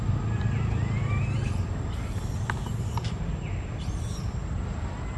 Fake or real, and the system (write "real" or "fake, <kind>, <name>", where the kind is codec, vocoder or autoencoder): real